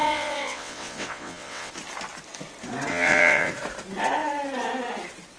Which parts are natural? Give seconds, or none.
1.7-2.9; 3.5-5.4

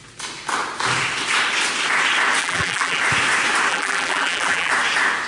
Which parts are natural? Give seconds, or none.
0.0-2.4; 3.0-3.7; 4.7-5.3

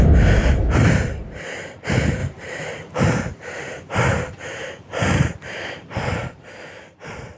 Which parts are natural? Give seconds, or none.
none

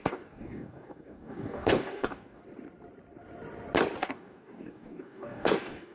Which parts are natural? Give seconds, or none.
2.4-4.0

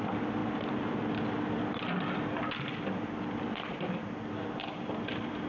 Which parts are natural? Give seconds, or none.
0.0-5.5

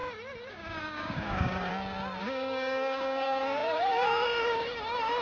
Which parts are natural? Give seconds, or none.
0.0-0.5; 1.7-2.2

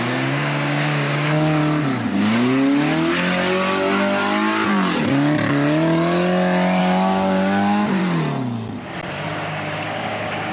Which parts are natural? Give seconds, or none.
1.6-6.8; 8.0-9.5